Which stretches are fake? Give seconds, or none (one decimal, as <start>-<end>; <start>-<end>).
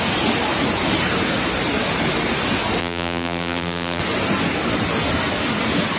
2.8-4.0